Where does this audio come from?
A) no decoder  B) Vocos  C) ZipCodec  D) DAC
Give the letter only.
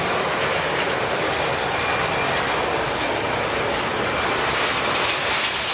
A